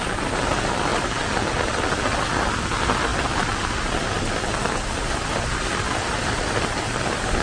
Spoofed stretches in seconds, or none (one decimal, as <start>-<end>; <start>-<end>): none